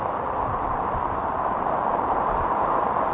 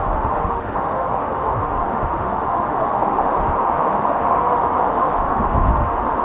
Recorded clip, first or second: first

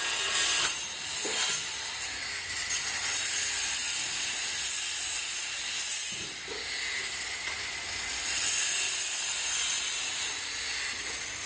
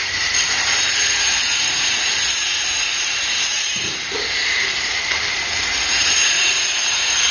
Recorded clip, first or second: first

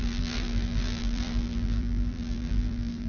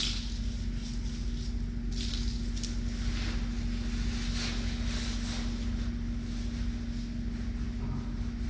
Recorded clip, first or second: second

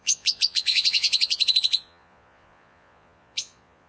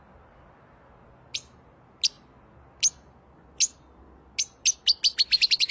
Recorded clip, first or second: second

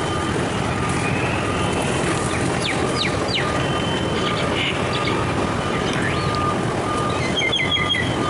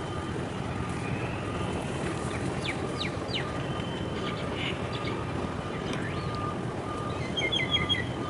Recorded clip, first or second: first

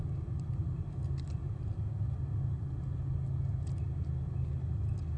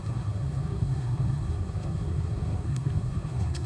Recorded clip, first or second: first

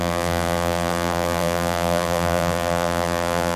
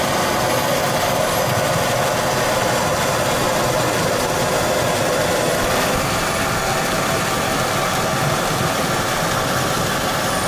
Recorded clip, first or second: second